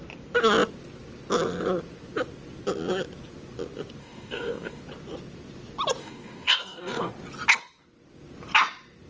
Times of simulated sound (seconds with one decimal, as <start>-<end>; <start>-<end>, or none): 4.0-4.8; 6.0-7.1